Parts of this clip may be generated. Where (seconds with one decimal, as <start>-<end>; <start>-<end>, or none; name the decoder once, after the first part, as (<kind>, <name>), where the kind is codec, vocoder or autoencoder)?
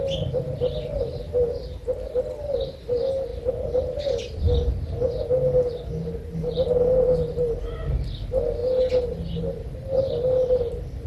none